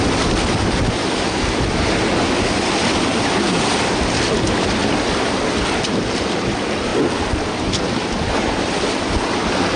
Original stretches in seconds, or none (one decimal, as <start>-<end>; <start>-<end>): 0.0-4.8; 5.5-9.8